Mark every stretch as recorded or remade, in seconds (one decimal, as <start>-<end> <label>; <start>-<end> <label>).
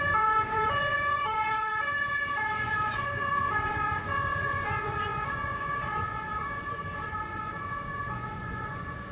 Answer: 0.0-9.1 remade